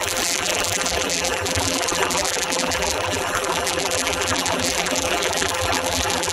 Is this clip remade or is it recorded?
remade